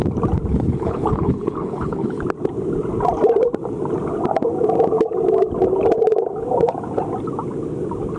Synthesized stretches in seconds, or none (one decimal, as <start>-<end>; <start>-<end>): 0.5-2.2